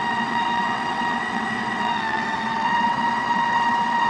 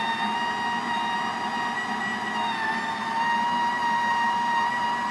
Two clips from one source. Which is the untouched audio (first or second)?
second